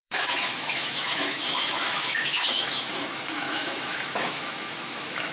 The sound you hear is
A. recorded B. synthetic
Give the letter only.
B